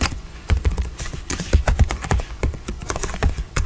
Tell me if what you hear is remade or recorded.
remade